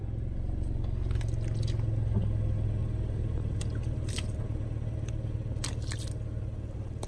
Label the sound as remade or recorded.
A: recorded